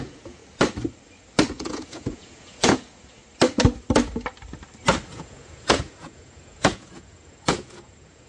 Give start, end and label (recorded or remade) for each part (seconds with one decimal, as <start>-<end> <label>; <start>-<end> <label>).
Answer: 0.0-0.4 remade; 0.4-1.5 recorded; 1.5-3.2 remade; 3.2-5.1 recorded; 5.1-8.3 remade